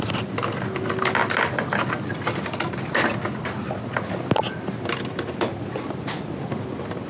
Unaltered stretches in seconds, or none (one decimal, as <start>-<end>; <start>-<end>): 0.0-7.1